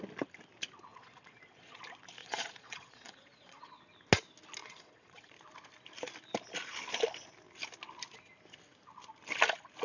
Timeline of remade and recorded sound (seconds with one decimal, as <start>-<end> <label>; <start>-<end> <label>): 0.0-0.9 recorded; 0.9-1.8 remade; 1.8-2.2 recorded; 2.2-3.8 remade; 3.8-4.6 recorded; 4.6-5.3 remade; 5.3-9.8 recorded